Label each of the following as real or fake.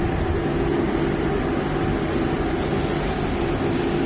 real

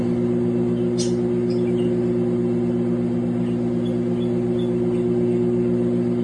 real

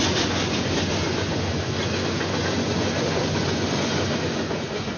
fake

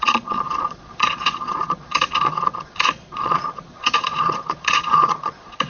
fake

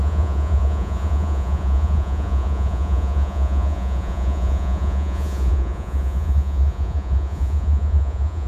fake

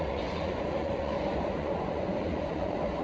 fake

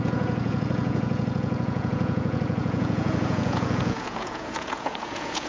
fake